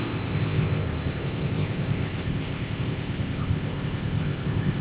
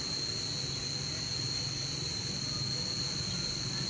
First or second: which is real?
second